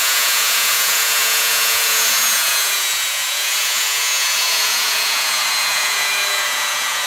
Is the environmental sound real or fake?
fake